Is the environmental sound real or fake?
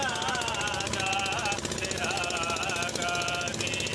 real